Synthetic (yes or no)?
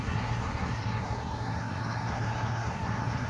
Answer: yes